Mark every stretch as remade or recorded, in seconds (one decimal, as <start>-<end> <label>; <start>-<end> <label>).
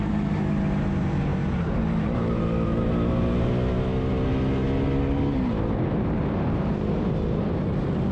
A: 0.0-8.1 recorded